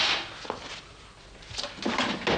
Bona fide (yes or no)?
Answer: yes